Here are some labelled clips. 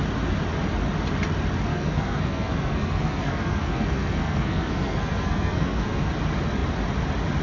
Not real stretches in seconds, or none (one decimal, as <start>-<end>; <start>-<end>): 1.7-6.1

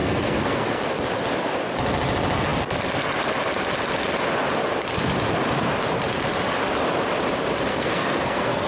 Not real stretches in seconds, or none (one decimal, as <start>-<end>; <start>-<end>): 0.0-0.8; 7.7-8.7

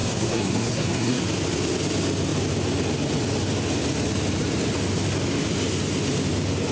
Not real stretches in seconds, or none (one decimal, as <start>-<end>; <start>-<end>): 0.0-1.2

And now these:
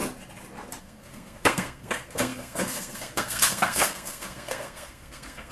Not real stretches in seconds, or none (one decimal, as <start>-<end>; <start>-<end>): 0.8-5.5